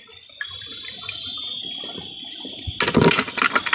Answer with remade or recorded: recorded